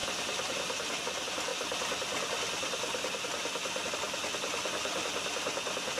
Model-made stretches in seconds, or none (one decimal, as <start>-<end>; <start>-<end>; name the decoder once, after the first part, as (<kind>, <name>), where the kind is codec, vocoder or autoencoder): 0.0-1.0 (vocoder, BigVGAN v2)